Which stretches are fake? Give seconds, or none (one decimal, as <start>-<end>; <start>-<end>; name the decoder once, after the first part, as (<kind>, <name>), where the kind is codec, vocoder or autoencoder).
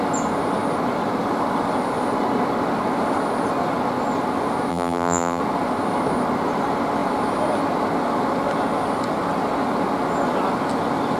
4.7-5.4 (vocoder, BigVGAN v2)